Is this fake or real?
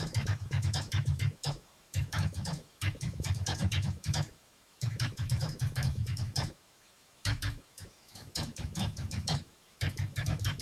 fake